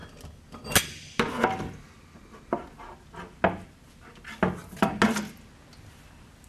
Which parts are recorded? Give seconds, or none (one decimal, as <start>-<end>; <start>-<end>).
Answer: 0.0-6.5